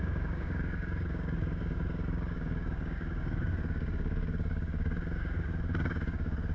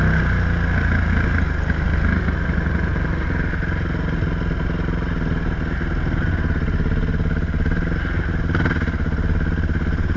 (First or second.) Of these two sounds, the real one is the second